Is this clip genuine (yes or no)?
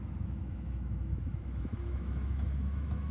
no